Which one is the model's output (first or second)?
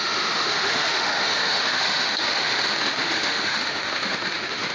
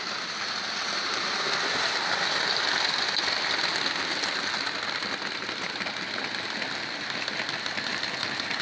first